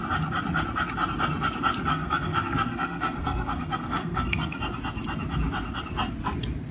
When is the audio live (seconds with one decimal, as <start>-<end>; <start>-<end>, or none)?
0.0-1.9; 4.6-6.7

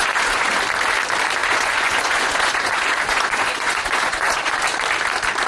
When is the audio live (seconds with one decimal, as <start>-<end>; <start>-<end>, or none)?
0.6-1.4; 4.6-5.5

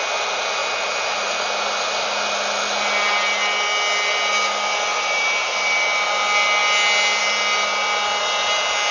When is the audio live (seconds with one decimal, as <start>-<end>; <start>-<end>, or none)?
0.0-8.9

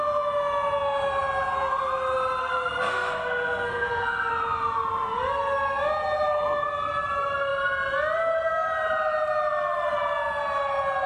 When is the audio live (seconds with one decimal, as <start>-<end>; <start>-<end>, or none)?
0.0-2.4; 4.3-11.1